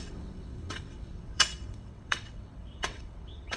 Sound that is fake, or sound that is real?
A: fake